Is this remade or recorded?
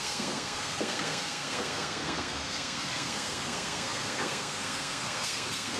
remade